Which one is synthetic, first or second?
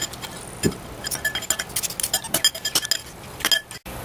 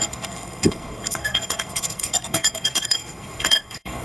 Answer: second